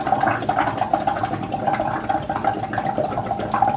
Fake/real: real